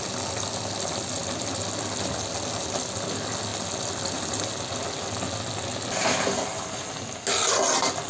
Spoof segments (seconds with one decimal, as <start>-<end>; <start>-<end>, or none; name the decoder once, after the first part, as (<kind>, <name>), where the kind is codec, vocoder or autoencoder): none

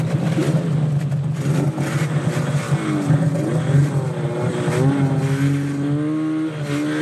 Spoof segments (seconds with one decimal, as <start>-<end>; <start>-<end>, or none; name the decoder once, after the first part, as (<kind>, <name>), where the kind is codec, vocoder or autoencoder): none

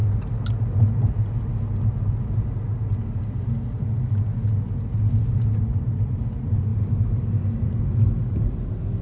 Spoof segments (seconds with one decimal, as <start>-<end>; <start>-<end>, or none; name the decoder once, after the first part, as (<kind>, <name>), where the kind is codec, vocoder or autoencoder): 6.7-7.2 (vocoder, BigVGAN v2)

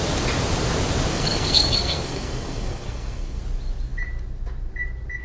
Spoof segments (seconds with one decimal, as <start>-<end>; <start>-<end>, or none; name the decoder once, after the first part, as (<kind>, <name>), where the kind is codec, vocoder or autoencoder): 1.1-3.4 (codec, SNAC)

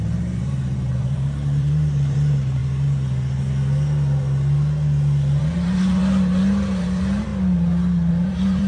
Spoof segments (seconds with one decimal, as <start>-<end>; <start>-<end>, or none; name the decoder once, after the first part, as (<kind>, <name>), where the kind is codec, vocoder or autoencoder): 0.0-2.6 (vocoder, BigVGAN v2); 5.4-6.0; 6.8-7.3; 8.1-8.7

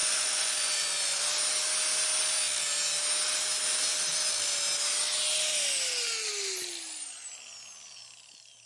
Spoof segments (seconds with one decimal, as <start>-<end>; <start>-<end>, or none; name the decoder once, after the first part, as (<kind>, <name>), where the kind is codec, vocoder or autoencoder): 0.0-1.2 (vocoder, Vocos)

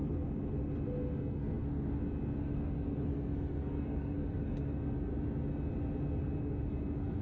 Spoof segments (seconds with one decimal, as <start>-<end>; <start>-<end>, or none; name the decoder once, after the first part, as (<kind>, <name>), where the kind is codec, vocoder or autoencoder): 1.2-1.9 (codec, SNAC); 2.4-5.1; 6.4-7.2

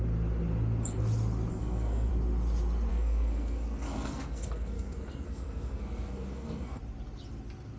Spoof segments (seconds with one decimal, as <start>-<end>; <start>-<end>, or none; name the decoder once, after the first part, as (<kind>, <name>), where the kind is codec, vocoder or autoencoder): 1.5-2.1 (codec, SNAC); 2.9-6.8